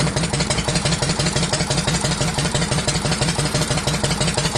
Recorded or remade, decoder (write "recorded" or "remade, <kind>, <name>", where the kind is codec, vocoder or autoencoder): remade, vocoder, BigVGAN v2